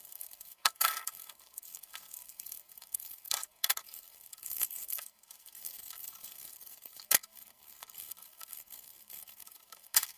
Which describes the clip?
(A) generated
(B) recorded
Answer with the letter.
A